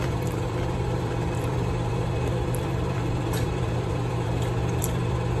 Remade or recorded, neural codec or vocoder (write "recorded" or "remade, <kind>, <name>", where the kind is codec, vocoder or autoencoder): remade, vocoder, BigVGAN v2